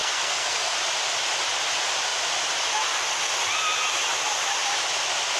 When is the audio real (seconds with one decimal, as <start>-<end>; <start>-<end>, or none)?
0.7-5.4